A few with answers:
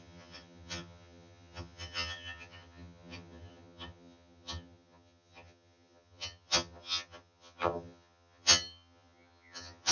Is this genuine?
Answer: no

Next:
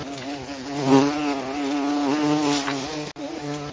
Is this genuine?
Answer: yes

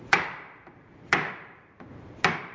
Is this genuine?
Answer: no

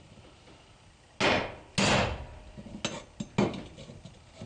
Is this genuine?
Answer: yes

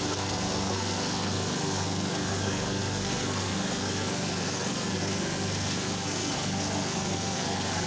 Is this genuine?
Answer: no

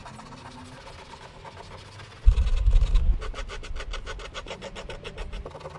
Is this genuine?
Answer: yes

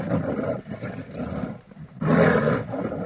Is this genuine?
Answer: yes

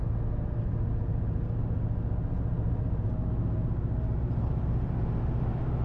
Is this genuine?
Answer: yes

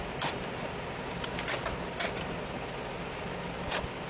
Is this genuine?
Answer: yes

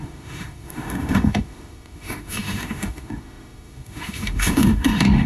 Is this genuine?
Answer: no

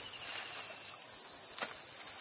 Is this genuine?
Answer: yes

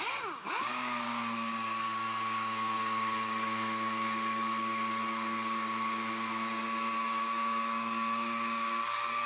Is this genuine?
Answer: no